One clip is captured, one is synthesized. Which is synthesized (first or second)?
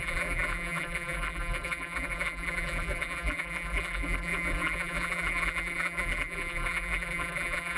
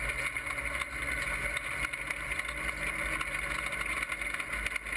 first